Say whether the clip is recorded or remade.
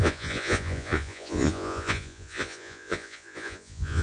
remade